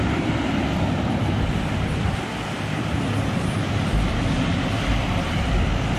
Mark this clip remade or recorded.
remade